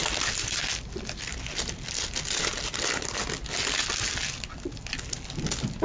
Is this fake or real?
real